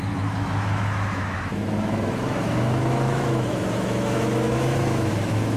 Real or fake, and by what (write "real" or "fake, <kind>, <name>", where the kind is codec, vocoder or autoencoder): fake, autoencoder, DAC-VAE